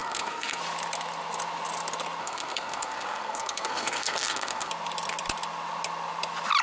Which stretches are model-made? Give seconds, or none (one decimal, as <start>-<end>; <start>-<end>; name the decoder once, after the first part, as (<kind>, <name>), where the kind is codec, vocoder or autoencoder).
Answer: 0.0-0.6 (codec, SNAC); 2.2-4.7

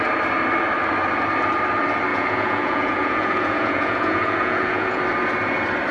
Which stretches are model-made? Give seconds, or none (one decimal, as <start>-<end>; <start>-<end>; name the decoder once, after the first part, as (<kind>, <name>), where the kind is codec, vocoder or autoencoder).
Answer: 2.1-5.0 (vocoder, Vocos)

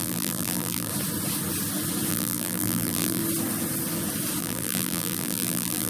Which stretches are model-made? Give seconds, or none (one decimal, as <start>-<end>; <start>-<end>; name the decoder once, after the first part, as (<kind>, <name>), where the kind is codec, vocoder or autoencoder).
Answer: 0.0-0.9 (vocoder, BigVGAN v2); 2.1-3.2; 4.4-5.9

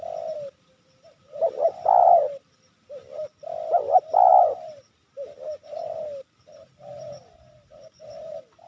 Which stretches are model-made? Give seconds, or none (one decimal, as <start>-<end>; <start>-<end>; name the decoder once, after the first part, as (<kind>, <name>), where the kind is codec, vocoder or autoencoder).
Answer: none

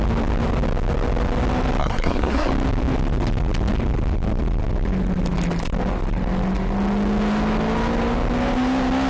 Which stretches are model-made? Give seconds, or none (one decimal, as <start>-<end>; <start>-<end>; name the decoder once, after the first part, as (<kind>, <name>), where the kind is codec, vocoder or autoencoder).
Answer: 1.8-2.5 (codec, SNAC)